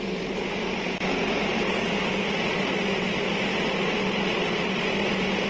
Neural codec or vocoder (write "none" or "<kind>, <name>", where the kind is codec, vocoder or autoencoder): none